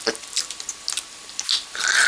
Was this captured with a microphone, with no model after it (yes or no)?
yes